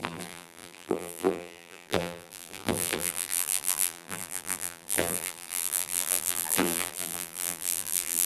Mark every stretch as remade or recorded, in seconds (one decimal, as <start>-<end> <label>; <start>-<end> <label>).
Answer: 0.0-8.2 remade